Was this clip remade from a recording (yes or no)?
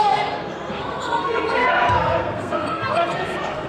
yes